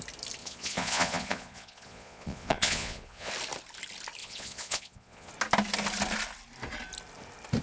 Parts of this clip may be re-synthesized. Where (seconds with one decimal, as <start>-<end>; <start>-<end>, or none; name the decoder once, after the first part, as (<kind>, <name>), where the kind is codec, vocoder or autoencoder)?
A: 0.4-3.3 (vocoder, Vocos); 4.2-5.3